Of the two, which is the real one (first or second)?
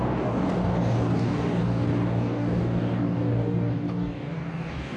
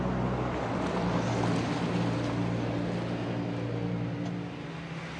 second